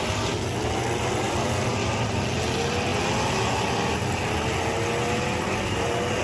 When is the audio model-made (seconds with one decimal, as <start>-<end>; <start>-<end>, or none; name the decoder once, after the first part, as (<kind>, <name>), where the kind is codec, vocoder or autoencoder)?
none